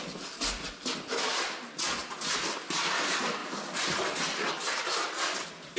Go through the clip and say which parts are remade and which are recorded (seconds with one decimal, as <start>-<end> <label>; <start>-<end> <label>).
0.0-5.8 recorded